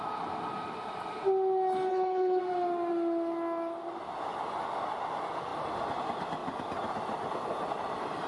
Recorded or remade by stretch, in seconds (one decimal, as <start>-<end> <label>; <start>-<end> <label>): 0.0-1.9 recorded; 1.9-2.4 remade; 2.4-8.3 recorded